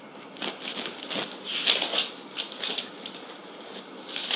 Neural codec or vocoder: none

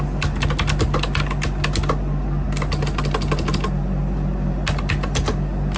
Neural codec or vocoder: none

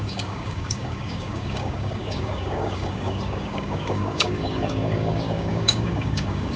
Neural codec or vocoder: codec, DAC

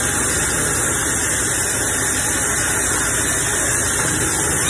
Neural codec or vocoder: none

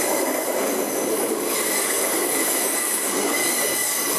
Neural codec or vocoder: codec, DAC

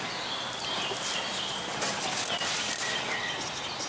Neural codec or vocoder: none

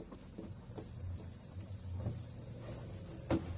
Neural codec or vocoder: none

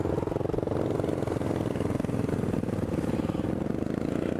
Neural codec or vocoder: none